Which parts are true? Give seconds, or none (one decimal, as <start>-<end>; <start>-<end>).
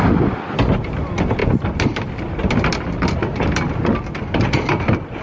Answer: 0.0-5.2